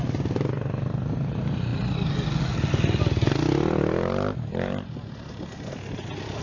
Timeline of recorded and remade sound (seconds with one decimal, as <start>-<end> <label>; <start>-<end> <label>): 0.0-6.4 recorded